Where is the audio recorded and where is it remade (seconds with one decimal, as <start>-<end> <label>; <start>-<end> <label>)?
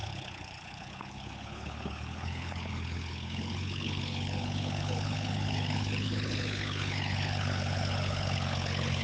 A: 0.0-9.0 remade